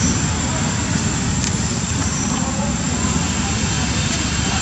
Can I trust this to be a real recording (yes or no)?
yes